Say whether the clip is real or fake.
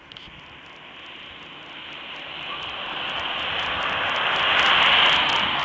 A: real